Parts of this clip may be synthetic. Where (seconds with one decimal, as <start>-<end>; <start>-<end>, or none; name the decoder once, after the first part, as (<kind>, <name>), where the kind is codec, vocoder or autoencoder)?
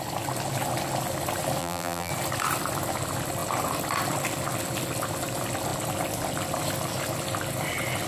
1.6-2.1 (vocoder, BigVGAN v2)